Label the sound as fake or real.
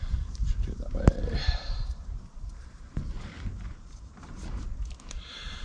fake